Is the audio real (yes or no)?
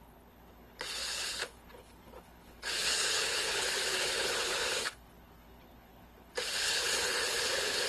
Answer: no